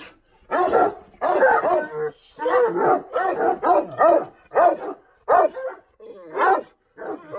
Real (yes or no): yes